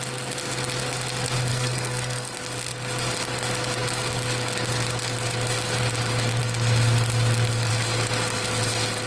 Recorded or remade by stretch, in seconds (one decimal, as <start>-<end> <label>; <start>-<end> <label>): 0.0-1.5 recorded; 1.5-2.3 remade; 2.3-9.1 recorded